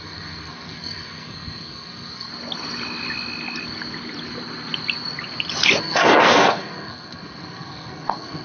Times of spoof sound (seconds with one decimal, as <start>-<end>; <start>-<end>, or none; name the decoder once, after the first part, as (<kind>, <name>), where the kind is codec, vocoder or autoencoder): 0.0-2.3 (codec, SNAC); 5.8-8.4